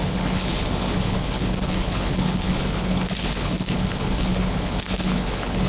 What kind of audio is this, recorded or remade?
remade